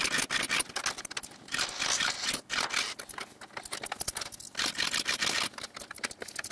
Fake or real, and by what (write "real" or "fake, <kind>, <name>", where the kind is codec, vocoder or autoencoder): real